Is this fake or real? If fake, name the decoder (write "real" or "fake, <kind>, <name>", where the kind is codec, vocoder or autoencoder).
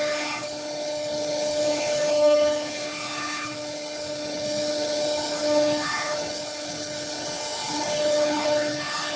fake, codec, HILCodec